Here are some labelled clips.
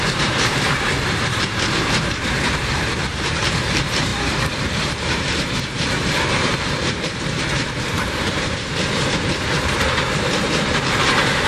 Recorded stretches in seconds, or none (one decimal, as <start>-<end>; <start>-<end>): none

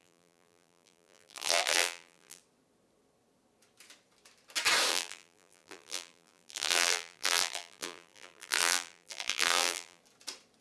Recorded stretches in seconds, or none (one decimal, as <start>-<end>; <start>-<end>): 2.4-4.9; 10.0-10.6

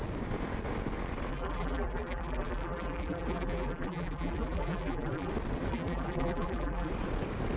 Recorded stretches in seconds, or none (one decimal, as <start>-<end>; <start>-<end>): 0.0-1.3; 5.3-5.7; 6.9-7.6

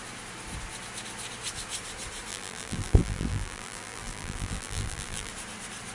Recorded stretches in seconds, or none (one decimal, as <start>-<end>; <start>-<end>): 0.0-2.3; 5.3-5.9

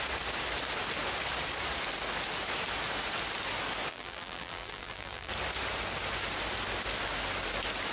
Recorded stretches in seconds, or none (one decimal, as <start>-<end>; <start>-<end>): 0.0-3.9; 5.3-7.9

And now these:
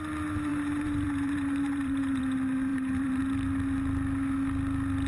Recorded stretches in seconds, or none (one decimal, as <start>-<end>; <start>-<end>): 0.0-0.5; 2.2-2.7; 3.2-5.1